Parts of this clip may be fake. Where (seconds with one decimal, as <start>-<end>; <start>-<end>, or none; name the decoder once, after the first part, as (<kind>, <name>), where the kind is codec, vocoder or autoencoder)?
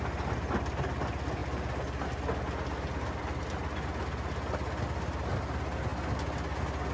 none